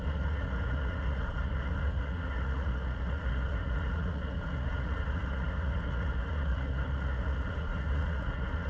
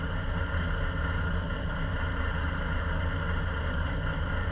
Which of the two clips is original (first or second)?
second